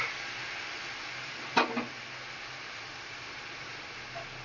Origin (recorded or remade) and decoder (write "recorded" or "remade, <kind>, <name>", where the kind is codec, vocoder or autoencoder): recorded